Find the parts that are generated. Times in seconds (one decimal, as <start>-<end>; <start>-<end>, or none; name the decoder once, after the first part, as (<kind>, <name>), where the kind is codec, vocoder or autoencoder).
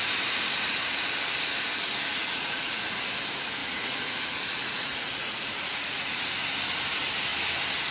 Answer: 2.1-2.8 (vocoder, Vocos); 3.6-6.2